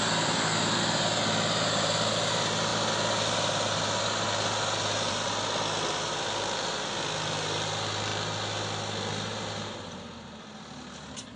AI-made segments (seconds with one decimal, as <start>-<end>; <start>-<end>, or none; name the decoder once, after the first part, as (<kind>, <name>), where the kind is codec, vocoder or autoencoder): none

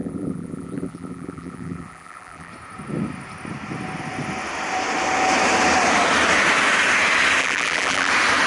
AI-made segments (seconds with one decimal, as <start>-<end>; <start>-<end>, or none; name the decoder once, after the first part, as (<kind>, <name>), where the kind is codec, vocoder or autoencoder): 0.0-2.5 (vocoder, BigVGAN v2); 7.4-8.1

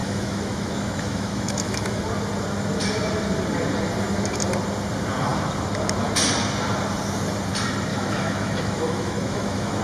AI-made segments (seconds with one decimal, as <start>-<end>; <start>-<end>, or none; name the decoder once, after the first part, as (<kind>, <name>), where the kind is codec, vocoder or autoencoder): 0.0-2.0 (autoencoder, DAC-VAE); 7.9-9.8

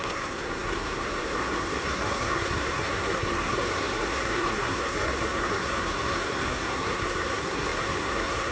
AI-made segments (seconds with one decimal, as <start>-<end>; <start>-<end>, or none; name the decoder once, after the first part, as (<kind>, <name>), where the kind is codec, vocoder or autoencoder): 0.0-8.5 (codec, SNAC)

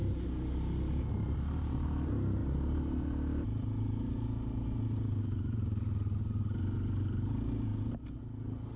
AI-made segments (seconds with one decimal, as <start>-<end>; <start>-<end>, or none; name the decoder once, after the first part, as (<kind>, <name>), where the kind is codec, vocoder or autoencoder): none

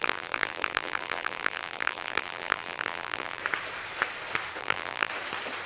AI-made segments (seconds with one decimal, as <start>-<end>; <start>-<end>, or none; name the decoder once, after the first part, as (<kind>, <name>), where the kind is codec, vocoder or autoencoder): 0.0-3.4 (vocoder, BigVGAN v2); 4.6-5.1

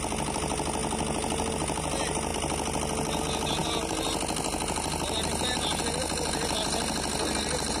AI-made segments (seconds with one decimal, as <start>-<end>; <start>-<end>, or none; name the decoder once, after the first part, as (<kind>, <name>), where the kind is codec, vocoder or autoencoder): none